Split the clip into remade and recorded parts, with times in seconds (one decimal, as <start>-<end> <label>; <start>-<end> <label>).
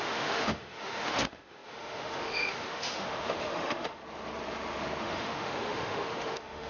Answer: 0.0-4.0 remade; 4.0-5.0 recorded; 5.0-6.7 remade